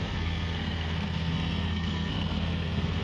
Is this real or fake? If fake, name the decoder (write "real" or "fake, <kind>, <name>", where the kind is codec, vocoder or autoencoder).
fake, codec, SNAC